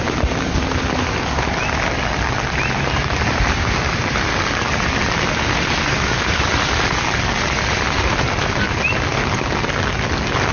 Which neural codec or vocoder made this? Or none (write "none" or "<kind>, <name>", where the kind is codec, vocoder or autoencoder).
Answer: none